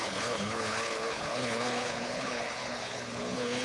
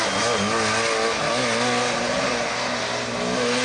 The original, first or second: second